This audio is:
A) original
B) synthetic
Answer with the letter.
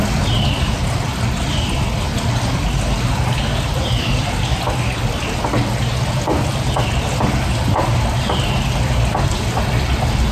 A